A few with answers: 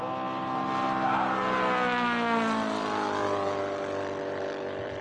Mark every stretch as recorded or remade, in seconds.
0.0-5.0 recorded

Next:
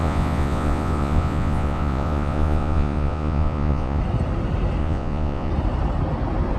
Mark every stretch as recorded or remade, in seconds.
0.0-4.0 remade; 4.0-4.8 recorded; 4.8-5.5 remade; 5.5-6.6 recorded

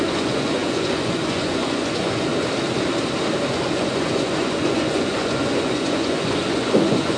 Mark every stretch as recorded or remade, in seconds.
0.0-2.3 remade; 2.3-3.5 recorded; 3.5-7.2 remade

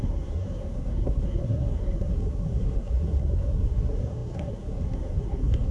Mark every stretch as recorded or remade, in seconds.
0.0-5.7 remade

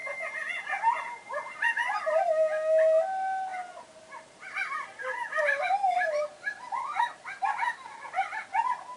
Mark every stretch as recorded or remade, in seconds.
0.0-9.0 recorded

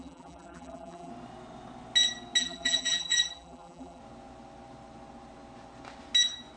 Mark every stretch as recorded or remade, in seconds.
0.0-1.1 remade; 1.1-2.4 recorded; 2.4-4.0 remade; 4.0-6.6 recorded

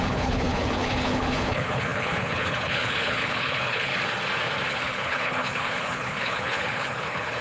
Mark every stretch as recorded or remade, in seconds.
0.0-3.9 remade; 3.9-4.7 recorded; 4.7-7.4 remade

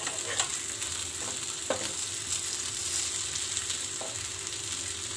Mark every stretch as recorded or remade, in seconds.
0.0-5.2 recorded